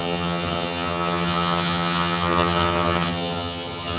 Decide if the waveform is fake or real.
fake